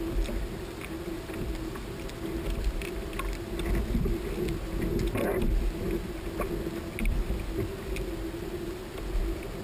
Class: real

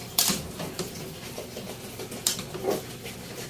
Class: fake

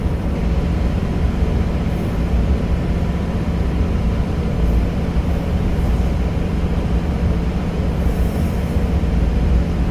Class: fake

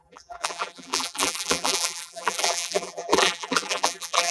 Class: fake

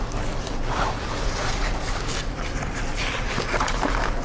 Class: real